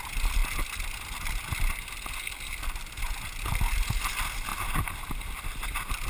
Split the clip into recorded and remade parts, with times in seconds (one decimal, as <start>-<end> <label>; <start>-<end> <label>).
0.0-6.1 recorded